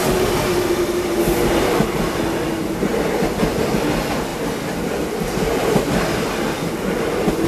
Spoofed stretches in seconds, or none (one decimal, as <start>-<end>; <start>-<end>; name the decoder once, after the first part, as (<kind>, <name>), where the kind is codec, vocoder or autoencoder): none

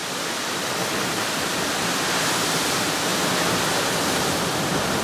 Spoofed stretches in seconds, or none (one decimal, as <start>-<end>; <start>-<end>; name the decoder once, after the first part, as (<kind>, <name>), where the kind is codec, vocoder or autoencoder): 0.0-3.1 (vocoder, BigVGAN v2); 4.0-5.0

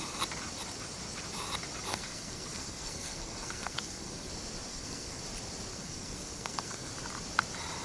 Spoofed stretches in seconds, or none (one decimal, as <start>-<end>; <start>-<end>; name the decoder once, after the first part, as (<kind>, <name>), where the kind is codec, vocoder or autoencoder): 1.9-4.3 (codec, SNAC); 4.7-5.2; 5.7-6.9